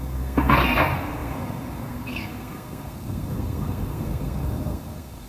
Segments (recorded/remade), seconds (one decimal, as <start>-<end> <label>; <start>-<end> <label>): 0.0-5.3 remade